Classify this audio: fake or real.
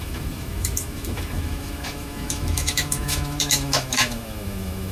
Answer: fake